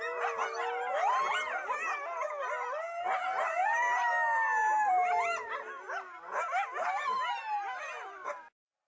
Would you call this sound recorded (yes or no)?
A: yes